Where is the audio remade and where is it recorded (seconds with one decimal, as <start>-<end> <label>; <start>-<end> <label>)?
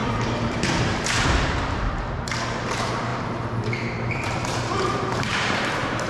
0.0-1.9 remade; 1.9-3.1 recorded; 3.1-6.1 remade